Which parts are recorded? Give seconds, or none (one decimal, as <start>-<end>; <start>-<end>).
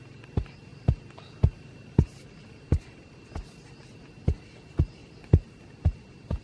0.0-6.4